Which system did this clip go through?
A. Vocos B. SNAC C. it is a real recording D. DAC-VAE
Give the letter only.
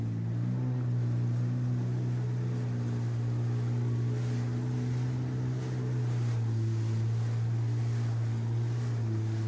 C